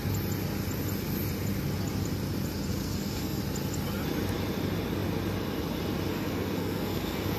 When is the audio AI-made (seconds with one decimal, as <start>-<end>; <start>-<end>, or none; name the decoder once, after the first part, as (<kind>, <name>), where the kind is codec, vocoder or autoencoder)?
2.7-3.4 (codec, SNAC); 6.1-7.4